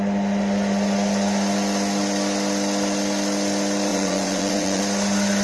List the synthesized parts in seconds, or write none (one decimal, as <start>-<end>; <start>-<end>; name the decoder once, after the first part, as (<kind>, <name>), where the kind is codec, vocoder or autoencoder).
3.9-4.8 (vocoder, Vocos)